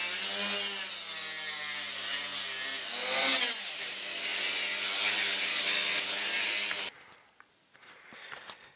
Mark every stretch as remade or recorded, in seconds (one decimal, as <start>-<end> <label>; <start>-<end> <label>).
0.0-3.4 recorded; 3.4-4.3 remade; 4.3-5.6 recorded; 5.6-8.8 remade